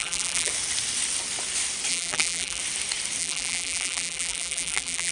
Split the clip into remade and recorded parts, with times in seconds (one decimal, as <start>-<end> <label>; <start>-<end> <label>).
0.0-0.5 remade; 0.5-1.9 recorded; 1.9-2.6 remade; 2.6-3.2 recorded; 3.2-5.1 remade